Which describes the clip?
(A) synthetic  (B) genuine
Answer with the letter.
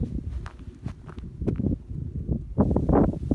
B